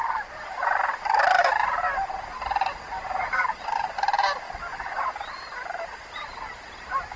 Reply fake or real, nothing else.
real